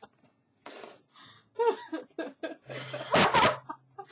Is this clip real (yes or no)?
yes